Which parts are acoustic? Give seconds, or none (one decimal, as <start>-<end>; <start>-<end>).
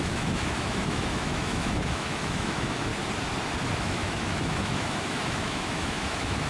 2.9-3.8